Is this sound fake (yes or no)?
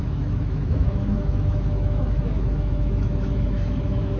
yes